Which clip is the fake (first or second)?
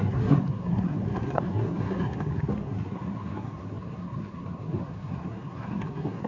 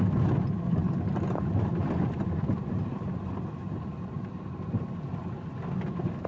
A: first